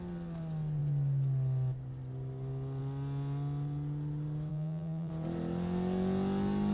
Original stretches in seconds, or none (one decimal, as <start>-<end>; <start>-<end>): 0.0-4.5; 5.1-6.7

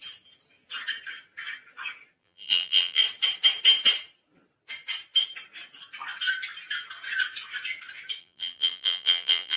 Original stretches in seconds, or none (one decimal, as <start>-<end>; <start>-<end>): 0.0-2.2; 3.0-8.2

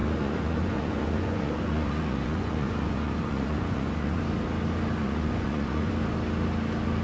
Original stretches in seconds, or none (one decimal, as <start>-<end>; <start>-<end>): 4.2-5.0; 5.9-7.0

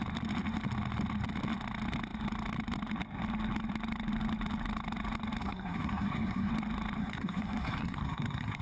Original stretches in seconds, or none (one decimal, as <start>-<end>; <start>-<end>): 0.0-5.4; 6.5-7.0

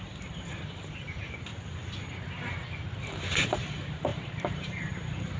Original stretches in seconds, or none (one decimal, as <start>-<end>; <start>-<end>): 1.5-3.3